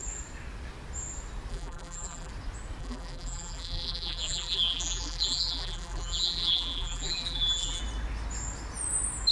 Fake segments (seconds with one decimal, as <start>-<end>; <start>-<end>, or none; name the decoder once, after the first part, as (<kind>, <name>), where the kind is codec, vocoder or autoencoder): 1.5-2.3 (vocoder, BigVGAN v2); 2.8-7.8